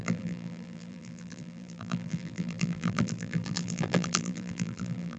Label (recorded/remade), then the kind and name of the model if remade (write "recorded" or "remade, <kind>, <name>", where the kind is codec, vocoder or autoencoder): remade, vocoder, BigVGAN v2